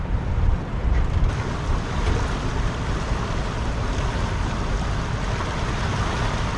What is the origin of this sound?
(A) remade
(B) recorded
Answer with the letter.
B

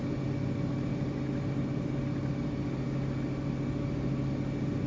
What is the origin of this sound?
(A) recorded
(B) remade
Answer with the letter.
A